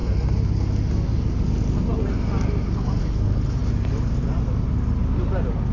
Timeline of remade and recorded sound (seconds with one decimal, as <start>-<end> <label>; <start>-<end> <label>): 0.0-5.7 recorded